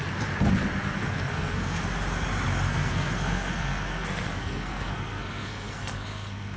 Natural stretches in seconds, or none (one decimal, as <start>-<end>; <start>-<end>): 0.0-1.0; 1.8-2.7